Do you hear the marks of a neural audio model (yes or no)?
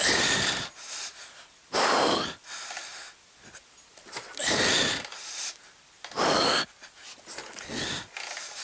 no